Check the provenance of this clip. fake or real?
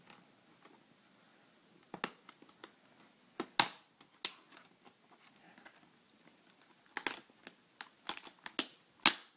real